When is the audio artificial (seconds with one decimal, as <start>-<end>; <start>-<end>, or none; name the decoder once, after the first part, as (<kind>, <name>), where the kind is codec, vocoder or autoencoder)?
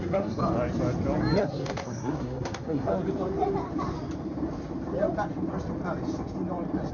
0.0-0.4 (codec, SNAC); 1.4-2.9